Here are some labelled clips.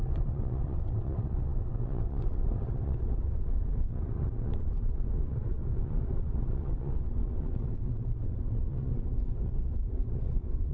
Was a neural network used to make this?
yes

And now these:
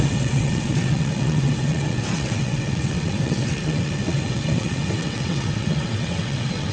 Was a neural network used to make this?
yes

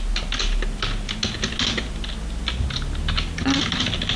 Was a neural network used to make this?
no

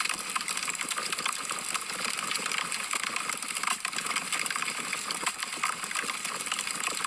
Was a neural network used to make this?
no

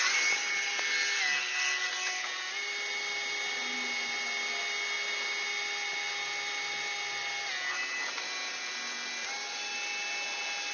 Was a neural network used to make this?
no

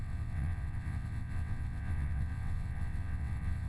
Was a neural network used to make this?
yes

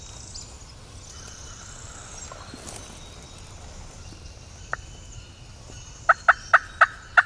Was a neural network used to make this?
no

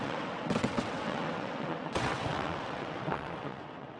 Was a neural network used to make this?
yes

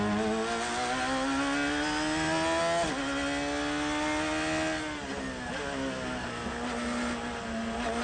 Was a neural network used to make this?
no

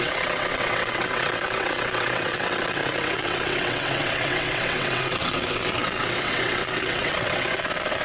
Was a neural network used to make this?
yes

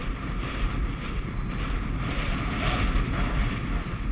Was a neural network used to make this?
no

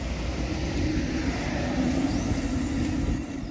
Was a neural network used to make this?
no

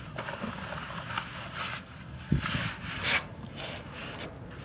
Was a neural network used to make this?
no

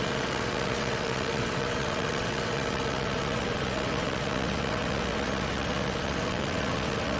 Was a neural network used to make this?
yes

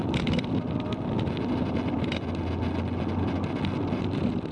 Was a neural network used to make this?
no